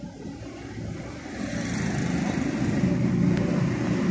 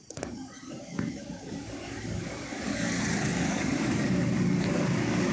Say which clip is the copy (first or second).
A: second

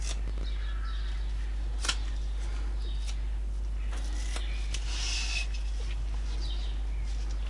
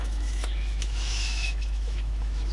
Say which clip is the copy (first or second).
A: second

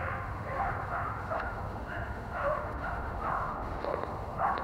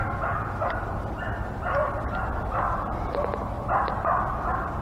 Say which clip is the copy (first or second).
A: first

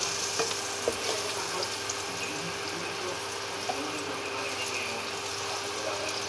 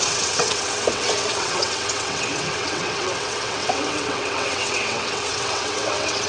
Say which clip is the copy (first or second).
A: second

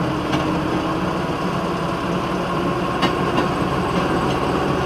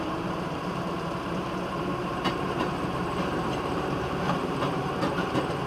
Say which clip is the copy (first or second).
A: second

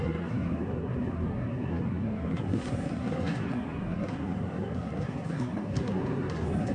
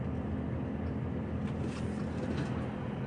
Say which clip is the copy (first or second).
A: first